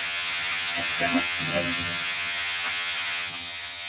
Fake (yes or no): yes